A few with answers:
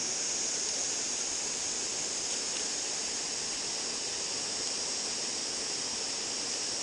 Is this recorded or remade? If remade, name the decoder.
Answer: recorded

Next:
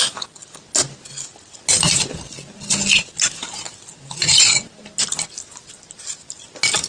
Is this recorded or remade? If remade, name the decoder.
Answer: recorded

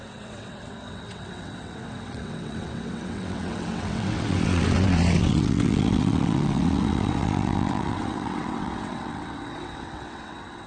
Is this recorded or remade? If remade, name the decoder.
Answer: remade, vocoder, WaveNeXt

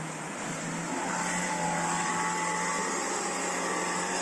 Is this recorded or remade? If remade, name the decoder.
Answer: recorded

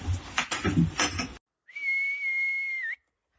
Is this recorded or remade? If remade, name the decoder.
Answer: recorded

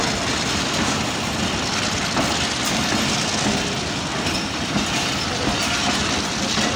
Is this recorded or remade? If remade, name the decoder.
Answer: recorded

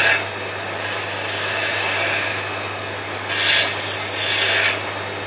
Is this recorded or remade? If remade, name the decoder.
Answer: recorded